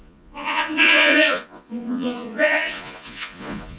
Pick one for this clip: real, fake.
fake